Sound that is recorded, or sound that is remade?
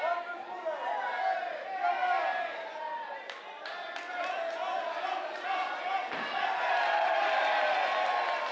recorded